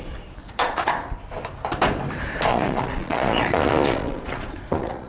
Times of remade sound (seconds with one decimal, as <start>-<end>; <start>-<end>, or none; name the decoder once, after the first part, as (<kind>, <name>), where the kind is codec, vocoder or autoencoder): 0.4-0.9 (vocoder, Vocos); 2.5-5.1